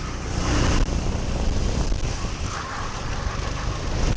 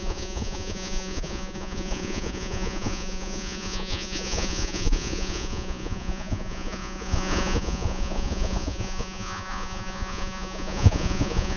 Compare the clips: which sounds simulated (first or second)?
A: second